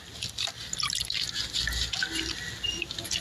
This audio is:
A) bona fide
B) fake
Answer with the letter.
A